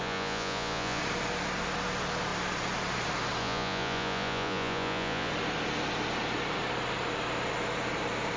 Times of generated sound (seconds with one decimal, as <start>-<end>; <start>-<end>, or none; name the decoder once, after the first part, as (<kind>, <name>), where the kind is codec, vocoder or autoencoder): 0.0-1.0 (vocoder, Vocos); 3.4-5.3